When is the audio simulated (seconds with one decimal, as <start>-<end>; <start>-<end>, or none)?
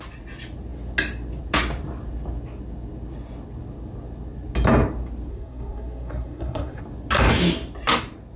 5.3-6.8